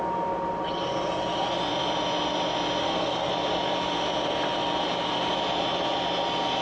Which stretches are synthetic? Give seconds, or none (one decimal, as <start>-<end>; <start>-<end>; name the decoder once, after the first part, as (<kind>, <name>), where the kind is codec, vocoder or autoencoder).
2.8-3.3 (codec, SNAC)